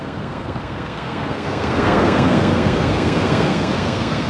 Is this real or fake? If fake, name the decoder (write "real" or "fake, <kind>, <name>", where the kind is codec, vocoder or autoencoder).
fake, codec, SNAC